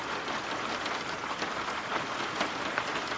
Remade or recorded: recorded